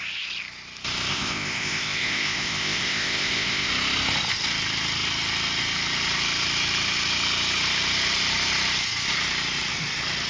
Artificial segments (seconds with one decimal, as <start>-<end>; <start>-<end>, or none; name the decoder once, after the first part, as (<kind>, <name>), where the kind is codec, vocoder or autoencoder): 1.1-3.7 (codec, ZipCodec)